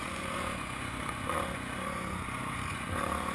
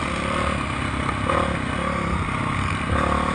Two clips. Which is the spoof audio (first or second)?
first